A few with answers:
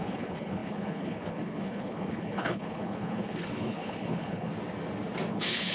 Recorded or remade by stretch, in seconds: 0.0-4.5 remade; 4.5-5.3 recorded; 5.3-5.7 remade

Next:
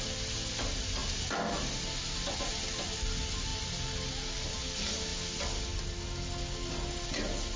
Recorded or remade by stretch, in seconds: 0.0-7.6 recorded

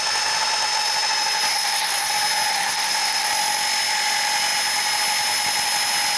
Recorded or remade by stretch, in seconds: 0.0-1.5 recorded; 1.5-2.1 remade; 2.1-2.5 recorded; 2.5-3.3 remade; 3.3-6.2 recorded

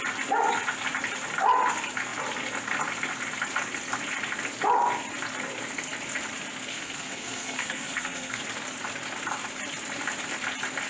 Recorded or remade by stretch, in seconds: 0.0-6.7 recorded; 6.7-8.4 remade; 8.4-10.9 recorded

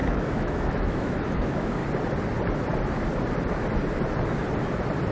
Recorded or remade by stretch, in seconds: 0.0-1.8 remade; 1.8-5.1 recorded

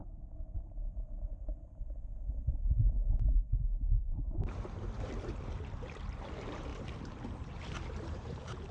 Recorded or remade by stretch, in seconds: 0.0-8.7 remade